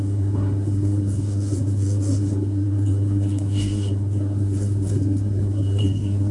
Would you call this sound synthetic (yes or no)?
yes